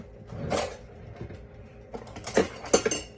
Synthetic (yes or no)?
no